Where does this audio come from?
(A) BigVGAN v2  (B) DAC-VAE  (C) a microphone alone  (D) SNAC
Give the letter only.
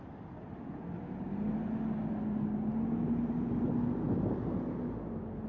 C